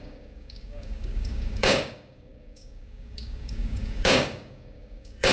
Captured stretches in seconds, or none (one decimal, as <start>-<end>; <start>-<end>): none